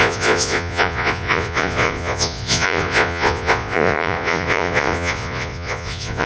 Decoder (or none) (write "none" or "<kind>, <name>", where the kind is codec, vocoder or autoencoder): vocoder, Vocos